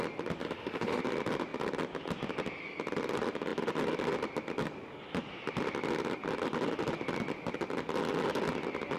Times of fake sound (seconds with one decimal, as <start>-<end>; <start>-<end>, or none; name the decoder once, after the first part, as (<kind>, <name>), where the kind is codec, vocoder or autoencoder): 0.4-1.0 (autoencoder, DAC-VAE)